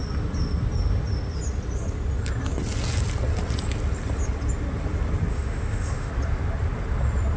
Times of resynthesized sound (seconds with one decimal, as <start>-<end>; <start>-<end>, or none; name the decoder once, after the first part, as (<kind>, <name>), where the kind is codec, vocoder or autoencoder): 5.3-6.1 (autoencoder, DAC-VAE)